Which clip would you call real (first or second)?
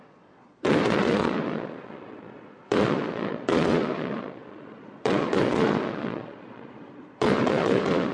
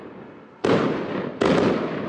second